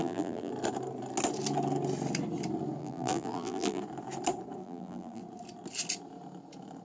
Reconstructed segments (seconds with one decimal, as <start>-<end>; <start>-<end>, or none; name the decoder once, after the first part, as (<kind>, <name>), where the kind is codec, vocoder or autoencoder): 0.0-0.5 (vocoder, BigVGAN v2); 2.8-3.8; 4.6-5.2